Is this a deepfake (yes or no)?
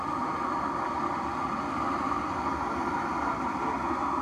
no